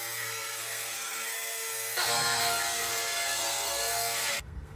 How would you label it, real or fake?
fake